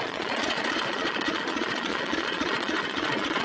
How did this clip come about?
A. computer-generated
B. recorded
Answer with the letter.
A